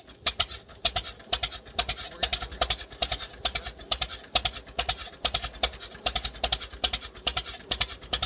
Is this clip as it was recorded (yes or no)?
yes